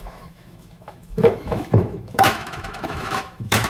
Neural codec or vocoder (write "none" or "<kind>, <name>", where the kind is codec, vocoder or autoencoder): autoencoder, DAC-VAE